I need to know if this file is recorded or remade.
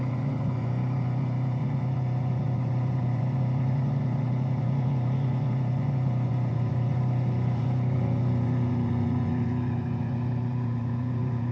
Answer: remade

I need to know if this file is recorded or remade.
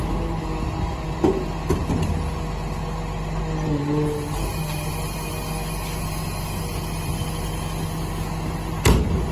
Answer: recorded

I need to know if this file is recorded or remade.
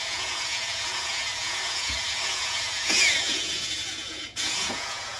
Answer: remade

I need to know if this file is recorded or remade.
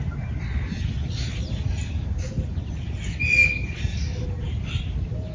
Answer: recorded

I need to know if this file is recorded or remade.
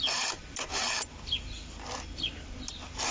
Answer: recorded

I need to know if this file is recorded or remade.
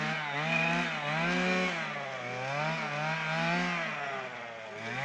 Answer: recorded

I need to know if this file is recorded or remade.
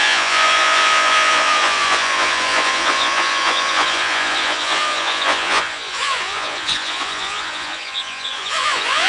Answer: remade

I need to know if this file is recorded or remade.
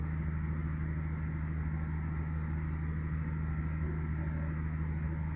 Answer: recorded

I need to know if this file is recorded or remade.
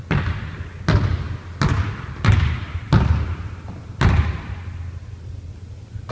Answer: recorded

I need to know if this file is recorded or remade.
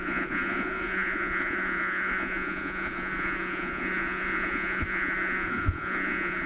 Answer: remade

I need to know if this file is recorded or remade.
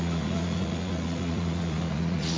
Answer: remade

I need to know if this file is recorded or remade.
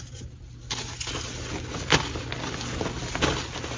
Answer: recorded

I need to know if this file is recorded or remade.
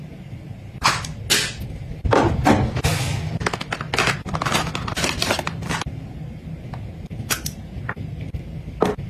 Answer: recorded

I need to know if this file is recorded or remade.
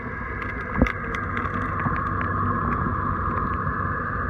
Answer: recorded